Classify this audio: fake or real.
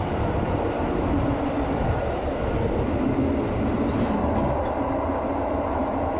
real